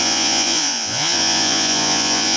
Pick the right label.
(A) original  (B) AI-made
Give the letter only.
B